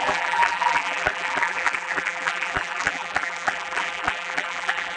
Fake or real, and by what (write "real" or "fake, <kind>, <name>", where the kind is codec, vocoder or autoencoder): fake, vocoder, BigVGAN v2